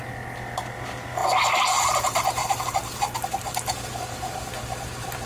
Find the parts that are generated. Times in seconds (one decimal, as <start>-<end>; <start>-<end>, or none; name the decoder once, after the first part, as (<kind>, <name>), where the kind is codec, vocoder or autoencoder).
none